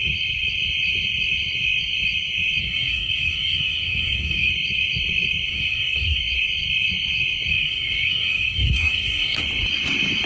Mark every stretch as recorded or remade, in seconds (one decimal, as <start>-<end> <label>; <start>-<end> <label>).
0.0-2.6 recorded; 2.6-4.5 remade; 4.5-5.5 recorded; 5.5-6.2 remade; 6.2-7.5 recorded; 7.5-9.4 remade; 9.4-10.3 recorded